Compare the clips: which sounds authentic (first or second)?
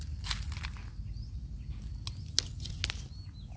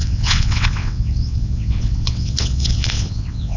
first